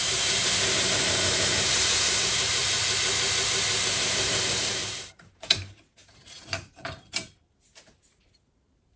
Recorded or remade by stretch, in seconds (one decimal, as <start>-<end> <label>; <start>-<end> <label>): 0.0-2.6 remade; 2.6-3.9 recorded; 3.9-9.0 remade